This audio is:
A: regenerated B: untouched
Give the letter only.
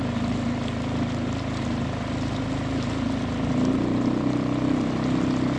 B